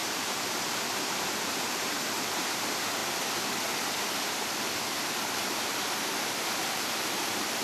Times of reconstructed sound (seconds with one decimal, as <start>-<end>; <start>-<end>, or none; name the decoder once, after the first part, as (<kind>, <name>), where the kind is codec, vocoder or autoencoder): 0.0-3.0 (vocoder, BigVGAN v2); 6.7-7.6